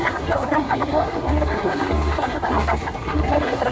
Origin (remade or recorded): remade